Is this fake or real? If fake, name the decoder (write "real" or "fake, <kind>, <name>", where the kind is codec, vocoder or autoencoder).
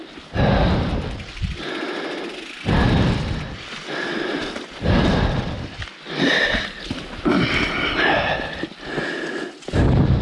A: real